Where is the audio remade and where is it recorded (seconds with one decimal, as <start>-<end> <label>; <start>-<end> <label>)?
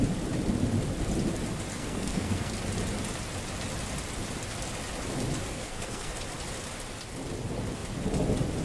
0.0-1.7 recorded; 1.7-2.5 remade; 2.5-5.5 recorded; 5.5-6.1 remade; 6.1-8.6 recorded